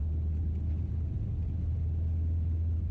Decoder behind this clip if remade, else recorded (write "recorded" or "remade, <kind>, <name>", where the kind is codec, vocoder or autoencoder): recorded